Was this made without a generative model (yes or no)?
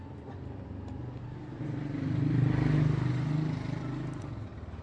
yes